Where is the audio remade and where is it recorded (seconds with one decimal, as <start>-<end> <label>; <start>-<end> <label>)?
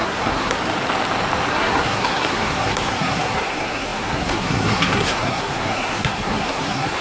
0.0-0.6 remade; 0.6-1.5 recorded; 1.5-7.0 remade